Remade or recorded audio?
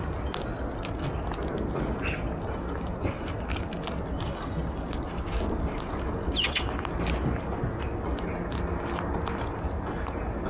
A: recorded